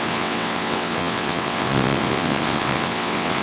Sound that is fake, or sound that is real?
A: fake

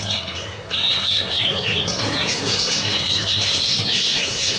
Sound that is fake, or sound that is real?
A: fake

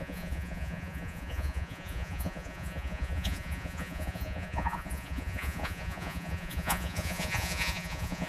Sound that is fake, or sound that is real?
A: fake